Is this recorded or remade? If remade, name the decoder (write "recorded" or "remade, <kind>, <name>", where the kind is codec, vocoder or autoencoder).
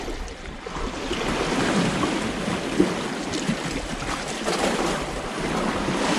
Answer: recorded